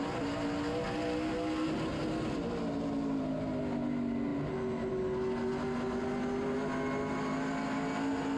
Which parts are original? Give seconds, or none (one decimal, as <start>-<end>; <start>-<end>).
0.0-8.4